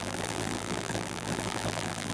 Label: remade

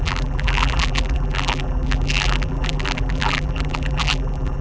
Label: remade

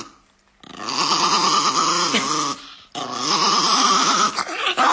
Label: recorded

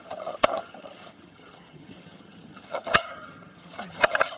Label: remade